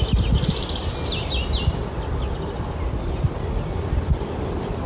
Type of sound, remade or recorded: recorded